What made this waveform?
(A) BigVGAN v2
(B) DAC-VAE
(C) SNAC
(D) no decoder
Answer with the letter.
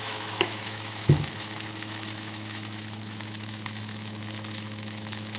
B